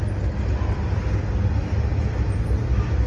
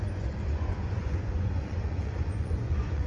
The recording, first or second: first